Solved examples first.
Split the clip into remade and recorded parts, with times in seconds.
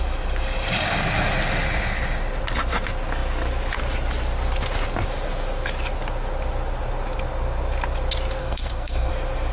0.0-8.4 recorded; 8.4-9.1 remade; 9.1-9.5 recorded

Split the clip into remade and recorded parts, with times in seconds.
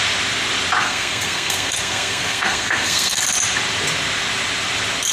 0.0-0.8 recorded; 0.8-3.2 remade; 3.2-5.1 recorded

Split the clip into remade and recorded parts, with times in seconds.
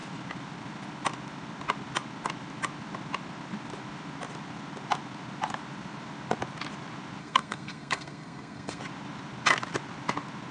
0.0-7.2 recorded; 7.2-8.8 remade; 8.8-10.5 recorded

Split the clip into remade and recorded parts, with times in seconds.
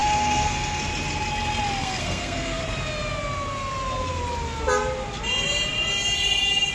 0.0-0.8 remade; 0.8-1.8 recorded; 1.8-2.6 remade; 2.6-6.7 recorded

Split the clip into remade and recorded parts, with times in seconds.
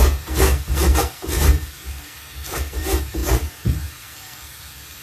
0.0-5.0 remade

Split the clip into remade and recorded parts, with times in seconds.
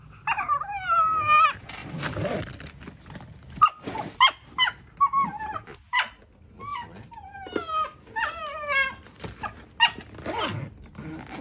0.0-11.4 recorded